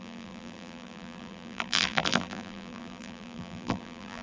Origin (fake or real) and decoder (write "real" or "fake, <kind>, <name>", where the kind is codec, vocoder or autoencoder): fake, vocoder, BigVGAN v2